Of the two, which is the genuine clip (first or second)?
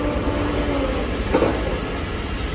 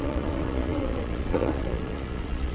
first